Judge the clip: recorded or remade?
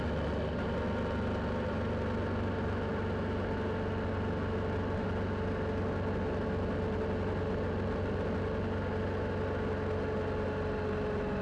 recorded